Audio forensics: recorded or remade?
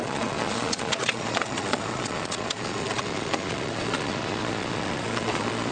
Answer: remade